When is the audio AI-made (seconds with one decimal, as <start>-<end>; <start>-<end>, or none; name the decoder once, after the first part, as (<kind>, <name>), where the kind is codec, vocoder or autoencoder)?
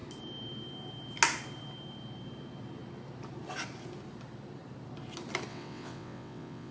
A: 5.5-6.7 (vocoder, WaveNeXt)